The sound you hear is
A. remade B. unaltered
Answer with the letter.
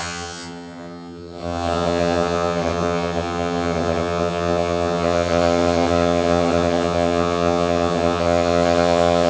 A